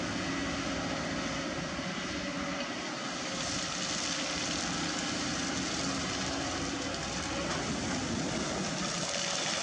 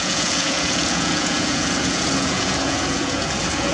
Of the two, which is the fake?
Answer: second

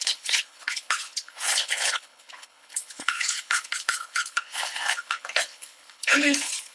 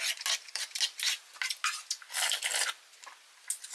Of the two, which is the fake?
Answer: first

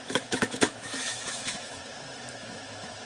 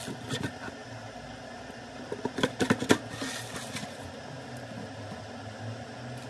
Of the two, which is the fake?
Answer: first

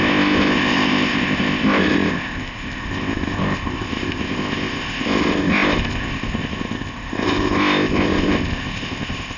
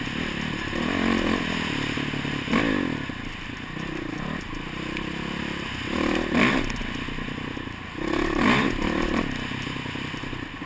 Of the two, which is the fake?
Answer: first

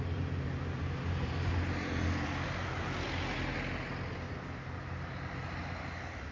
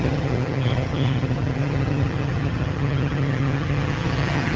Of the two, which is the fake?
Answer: second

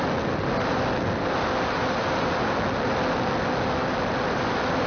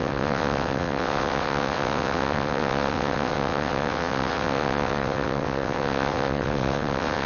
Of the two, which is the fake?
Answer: second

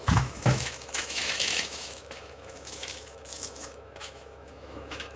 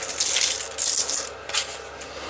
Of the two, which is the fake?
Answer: first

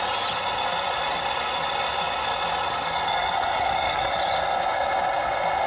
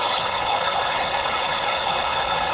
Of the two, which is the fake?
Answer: second